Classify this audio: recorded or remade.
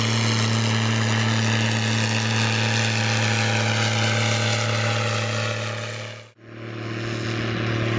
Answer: recorded